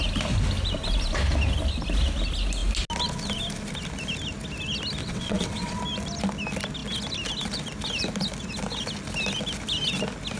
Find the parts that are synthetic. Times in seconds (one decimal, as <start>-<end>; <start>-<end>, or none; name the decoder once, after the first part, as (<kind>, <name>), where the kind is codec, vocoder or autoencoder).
5.0-5.8 (vocoder, WaveNeXt)

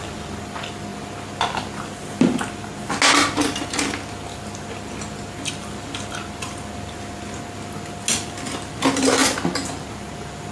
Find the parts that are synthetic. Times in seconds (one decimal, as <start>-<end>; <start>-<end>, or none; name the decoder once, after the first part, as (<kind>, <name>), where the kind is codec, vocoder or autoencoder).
none

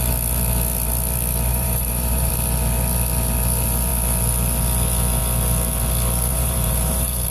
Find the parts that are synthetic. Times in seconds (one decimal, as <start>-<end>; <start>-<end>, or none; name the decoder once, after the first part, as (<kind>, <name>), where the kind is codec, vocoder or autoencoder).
1.5-2.3 (vocoder, BigVGAN v2); 6.3-7.3